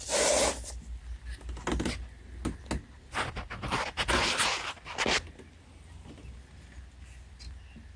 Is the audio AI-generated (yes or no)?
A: no